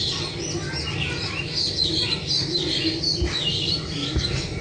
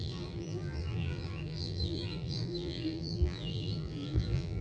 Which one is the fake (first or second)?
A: second